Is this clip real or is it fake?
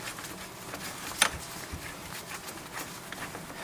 real